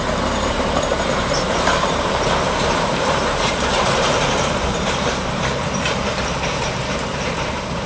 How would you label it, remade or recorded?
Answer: remade